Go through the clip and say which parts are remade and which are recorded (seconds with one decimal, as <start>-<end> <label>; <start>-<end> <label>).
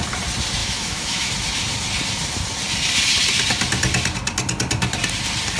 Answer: 0.0-0.6 recorded; 0.6-1.3 remade; 1.3-5.6 recorded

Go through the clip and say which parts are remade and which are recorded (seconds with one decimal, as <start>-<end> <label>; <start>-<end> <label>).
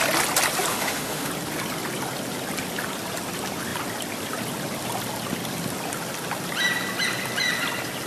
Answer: 0.0-0.7 recorded; 0.7-1.3 remade; 1.3-8.1 recorded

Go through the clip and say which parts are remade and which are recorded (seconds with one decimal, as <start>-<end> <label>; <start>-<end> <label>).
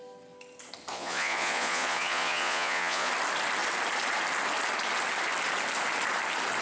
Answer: 0.0-0.9 recorded; 0.9-3.1 remade; 3.1-6.6 recorded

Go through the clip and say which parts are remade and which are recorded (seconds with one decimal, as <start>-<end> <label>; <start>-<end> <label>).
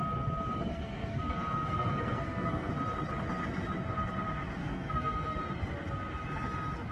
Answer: 0.0-0.7 recorded; 0.7-2.7 remade; 2.7-4.6 recorded; 4.6-5.4 remade; 5.4-6.9 recorded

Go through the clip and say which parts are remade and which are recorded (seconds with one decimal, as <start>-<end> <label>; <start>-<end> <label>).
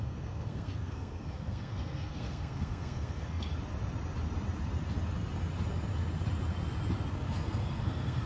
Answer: 0.0-3.5 remade; 3.5-7.1 recorded; 7.1-8.3 remade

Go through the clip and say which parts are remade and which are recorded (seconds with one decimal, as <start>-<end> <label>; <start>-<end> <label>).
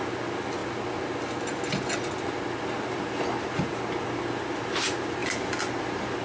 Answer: 0.0-0.6 remade; 0.6-4.0 recorded; 4.0-5.2 remade; 5.2-6.2 recorded